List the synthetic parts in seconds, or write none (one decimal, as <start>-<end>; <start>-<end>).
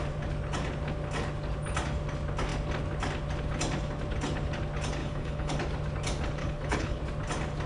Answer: 5.0-5.6; 6.4-7.0